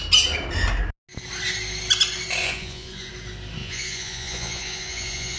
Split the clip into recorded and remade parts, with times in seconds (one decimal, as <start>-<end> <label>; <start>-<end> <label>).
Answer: 0.0-2.4 recorded; 2.4-3.1 remade; 3.1-3.6 recorded; 3.6-5.4 remade